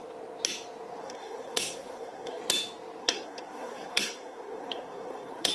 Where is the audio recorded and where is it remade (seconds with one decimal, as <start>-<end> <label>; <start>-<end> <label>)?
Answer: 0.0-1.0 recorded; 1.0-2.4 remade; 2.4-3.0 recorded; 3.0-5.5 remade